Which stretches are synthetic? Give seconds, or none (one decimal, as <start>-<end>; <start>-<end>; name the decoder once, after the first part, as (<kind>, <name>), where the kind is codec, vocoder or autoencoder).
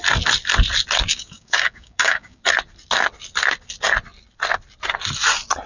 1.1-2.4 (codec, DAC)